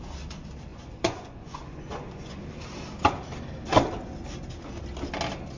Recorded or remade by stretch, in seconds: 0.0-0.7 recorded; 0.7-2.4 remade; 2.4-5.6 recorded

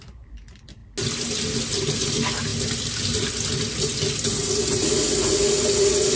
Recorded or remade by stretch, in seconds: 0.0-6.2 recorded

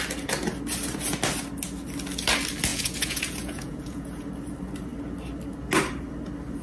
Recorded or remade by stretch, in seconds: 0.0-2.7 recorded; 2.7-4.3 remade; 4.3-6.6 recorded

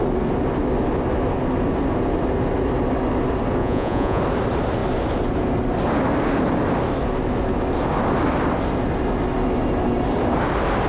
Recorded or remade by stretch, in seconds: 0.0-3.6 recorded; 3.6-4.2 remade; 4.2-10.9 recorded

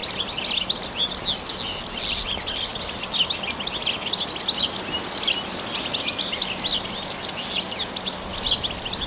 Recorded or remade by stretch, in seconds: 0.0-9.1 recorded

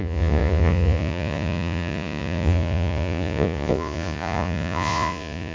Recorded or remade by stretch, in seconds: 0.0-5.5 remade

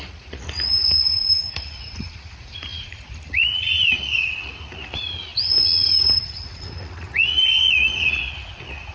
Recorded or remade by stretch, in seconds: 0.0-8.9 remade

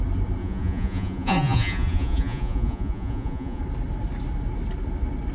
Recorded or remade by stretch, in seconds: 0.0-0.4 recorded; 0.4-3.6 remade; 3.6-5.3 recorded